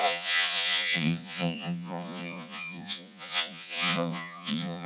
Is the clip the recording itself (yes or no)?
no